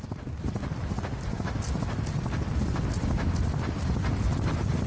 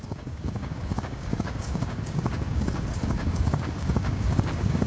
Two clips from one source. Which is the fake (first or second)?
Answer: second